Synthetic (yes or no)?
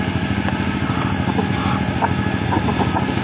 no